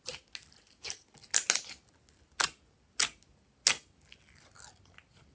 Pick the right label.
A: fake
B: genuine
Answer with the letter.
B